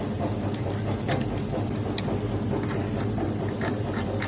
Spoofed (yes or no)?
no